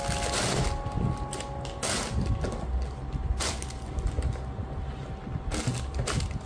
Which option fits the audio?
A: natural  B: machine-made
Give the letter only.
A